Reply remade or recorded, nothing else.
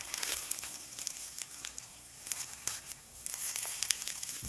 remade